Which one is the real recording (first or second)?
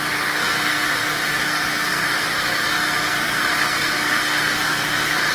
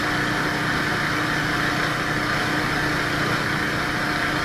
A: second